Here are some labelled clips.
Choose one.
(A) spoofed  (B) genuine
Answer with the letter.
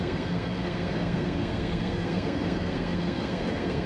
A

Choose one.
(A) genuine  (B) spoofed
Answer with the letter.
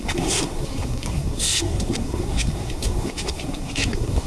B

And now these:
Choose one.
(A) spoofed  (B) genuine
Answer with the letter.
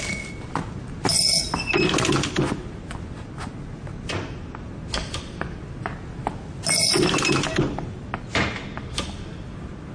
B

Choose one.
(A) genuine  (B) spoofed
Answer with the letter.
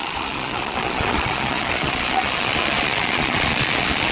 B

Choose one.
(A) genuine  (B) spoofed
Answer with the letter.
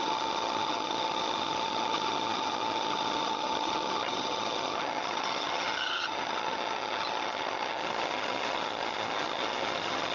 B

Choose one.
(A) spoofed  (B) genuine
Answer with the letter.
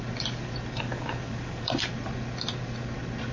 B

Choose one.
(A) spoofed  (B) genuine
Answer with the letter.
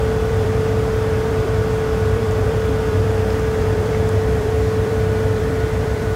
A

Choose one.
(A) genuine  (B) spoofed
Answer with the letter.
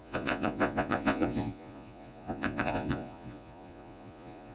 B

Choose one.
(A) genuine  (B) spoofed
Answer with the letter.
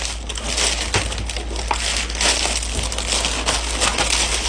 A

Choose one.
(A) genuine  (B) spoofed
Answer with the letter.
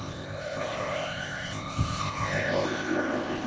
B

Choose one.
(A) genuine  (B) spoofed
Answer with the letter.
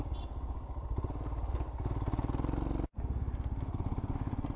A